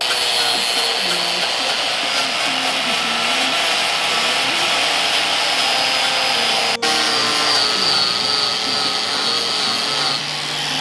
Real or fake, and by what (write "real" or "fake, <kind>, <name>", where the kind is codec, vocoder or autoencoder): real